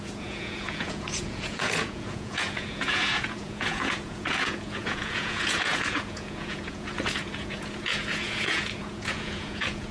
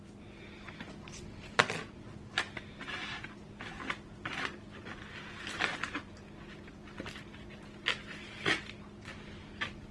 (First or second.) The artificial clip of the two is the first